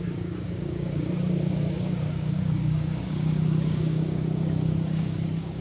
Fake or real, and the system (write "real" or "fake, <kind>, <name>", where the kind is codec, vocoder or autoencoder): fake, codec, DAC